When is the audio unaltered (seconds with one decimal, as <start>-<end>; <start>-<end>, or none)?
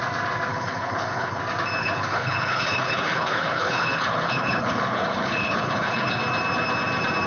0.0-0.5; 1.4-1.8; 6.2-7.3